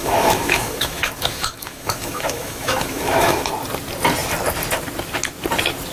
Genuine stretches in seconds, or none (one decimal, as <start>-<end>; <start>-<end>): 3.5-5.9